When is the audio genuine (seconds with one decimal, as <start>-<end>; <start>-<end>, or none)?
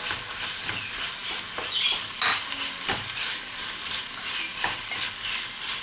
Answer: 0.0-5.8